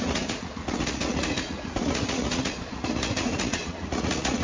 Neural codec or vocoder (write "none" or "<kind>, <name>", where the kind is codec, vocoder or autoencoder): vocoder, Vocos